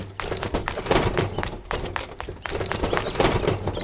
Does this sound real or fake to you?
real